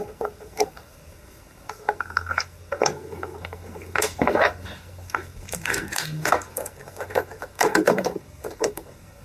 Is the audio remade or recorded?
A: remade